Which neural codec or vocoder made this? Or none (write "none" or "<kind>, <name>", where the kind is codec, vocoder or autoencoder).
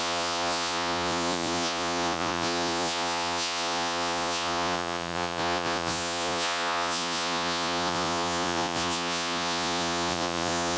vocoder, Vocos